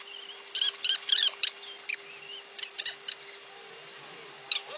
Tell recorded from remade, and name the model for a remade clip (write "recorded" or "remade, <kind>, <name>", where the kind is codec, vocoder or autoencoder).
recorded